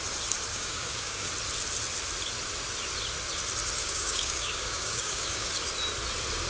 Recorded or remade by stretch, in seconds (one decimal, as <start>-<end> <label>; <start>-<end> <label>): 0.0-0.5 recorded; 0.5-1.3 remade; 1.3-3.8 recorded; 3.8-5.5 remade; 5.5-6.5 recorded